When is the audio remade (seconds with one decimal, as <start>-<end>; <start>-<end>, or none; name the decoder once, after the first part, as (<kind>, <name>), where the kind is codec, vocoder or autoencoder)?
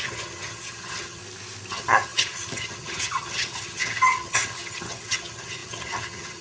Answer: 0.0-1.2 (vocoder, HiFi-GAN); 1.7-6.4